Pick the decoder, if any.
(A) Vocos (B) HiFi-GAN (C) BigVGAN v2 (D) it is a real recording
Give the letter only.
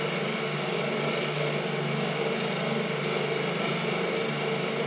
D